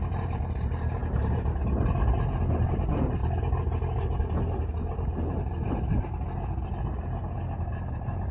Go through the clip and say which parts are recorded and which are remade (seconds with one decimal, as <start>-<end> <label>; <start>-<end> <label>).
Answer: 0.0-1.0 remade; 1.0-2.6 recorded; 2.6-3.2 remade; 3.2-7.9 recorded; 7.9-8.3 remade